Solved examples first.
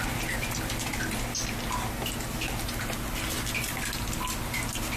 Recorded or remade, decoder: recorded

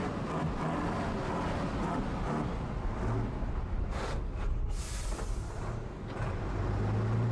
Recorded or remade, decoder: recorded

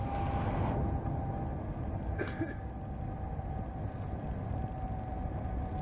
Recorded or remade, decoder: recorded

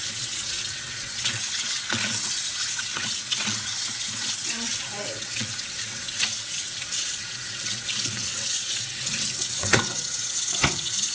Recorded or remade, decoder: remade, vocoder, WaveNeXt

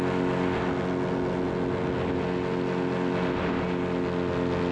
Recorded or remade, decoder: recorded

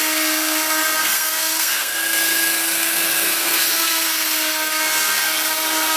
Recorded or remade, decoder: remade, codec, SNAC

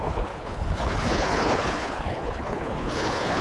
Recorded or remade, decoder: remade, codec, HILCodec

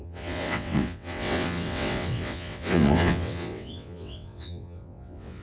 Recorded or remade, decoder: remade, vocoder, WaveNeXt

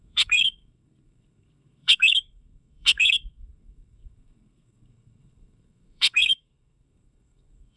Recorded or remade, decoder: remade, codec, SNAC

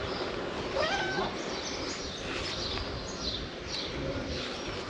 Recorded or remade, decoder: recorded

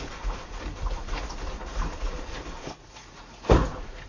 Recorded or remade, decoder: remade, vocoder, Vocos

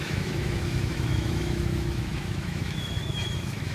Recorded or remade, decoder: remade, autoencoder, DAC-VAE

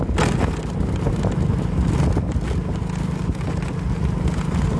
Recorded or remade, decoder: recorded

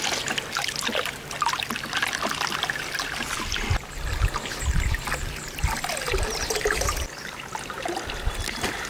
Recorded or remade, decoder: recorded